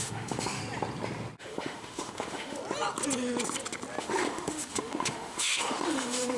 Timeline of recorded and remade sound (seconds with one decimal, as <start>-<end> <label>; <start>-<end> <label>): 0.0-0.6 remade; 0.6-1.4 recorded; 1.4-2.6 remade; 2.6-4.0 recorded; 4.0-6.4 remade